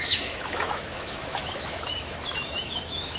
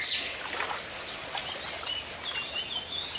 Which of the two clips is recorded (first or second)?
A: second